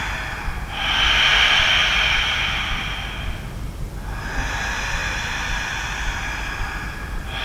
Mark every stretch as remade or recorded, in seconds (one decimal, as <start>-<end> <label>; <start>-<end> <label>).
0.0-5.0 recorded; 5.0-6.1 remade; 6.1-7.4 recorded